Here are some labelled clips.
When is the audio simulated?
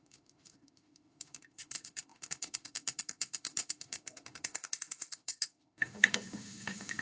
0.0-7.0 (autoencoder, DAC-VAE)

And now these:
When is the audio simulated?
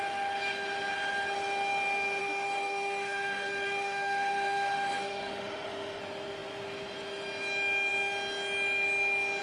2.2-6.0 (autoencoder, DAC-VAE)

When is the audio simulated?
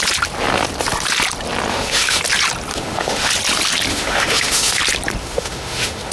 1.7-2.2 (autoencoder, DAC-VAE); 2.7-3.3; 3.9-4.8; 5.2-6.1